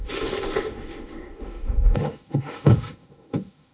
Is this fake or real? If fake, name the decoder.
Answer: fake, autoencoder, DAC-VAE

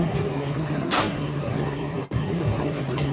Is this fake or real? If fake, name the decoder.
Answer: fake, codec, SNAC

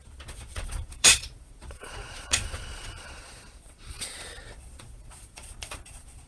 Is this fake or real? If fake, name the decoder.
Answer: fake, vocoder, Vocos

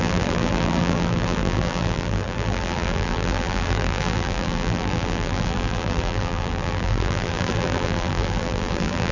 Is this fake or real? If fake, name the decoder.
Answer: fake, vocoder, BigVGAN v2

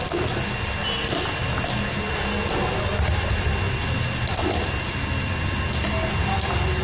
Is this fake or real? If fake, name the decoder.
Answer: real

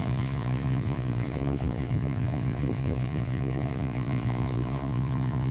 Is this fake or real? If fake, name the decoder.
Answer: fake, vocoder, Vocos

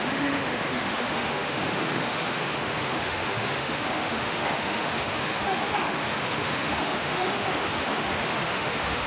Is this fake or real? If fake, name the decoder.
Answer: fake, autoencoder, DAC-VAE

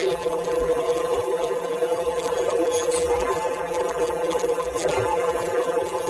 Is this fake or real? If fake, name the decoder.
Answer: fake, vocoder, BigVGAN v2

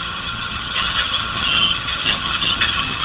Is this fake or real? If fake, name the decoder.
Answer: fake, vocoder, HiFi-GAN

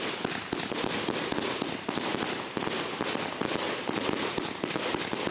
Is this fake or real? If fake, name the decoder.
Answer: real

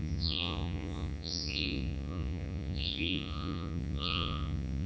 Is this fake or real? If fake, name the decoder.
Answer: fake, vocoder, Vocos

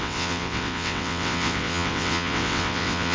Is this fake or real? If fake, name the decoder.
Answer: fake, vocoder, WaveNeXt